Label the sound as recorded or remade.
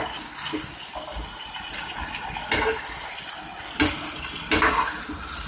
recorded